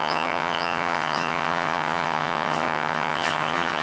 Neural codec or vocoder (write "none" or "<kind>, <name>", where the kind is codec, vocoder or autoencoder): vocoder, HiFi-GAN